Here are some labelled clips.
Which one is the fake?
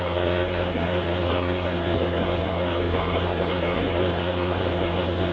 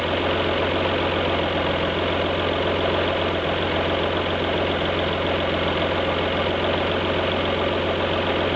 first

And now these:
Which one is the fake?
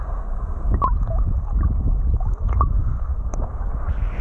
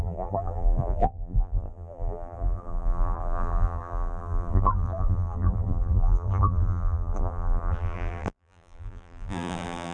second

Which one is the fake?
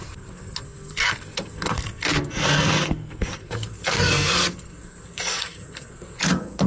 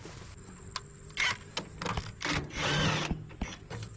first